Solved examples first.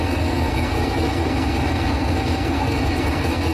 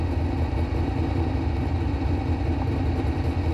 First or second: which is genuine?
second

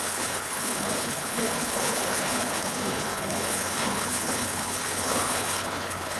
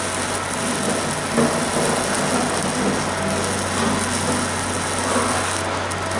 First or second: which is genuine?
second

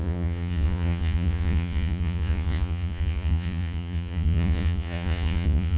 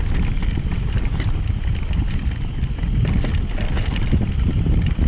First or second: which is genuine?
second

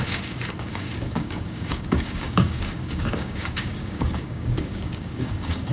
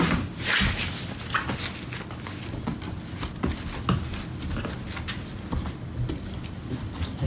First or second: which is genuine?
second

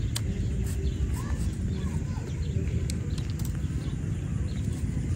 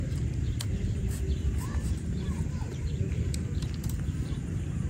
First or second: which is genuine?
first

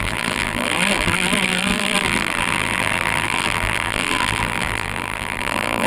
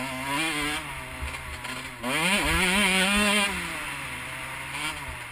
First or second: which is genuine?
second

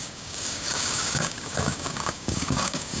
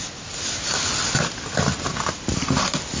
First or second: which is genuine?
second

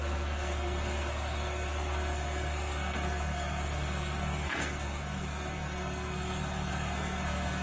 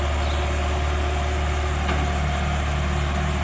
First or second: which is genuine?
second